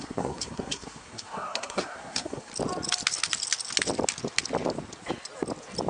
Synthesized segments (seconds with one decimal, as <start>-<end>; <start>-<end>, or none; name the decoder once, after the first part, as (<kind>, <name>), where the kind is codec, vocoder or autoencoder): 0.0-2.5 (codec, SNAC)